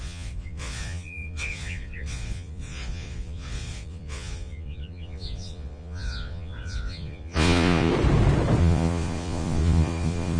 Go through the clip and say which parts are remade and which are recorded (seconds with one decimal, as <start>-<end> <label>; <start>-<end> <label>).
0.0-7.9 remade; 7.9-8.6 recorded; 8.6-10.4 remade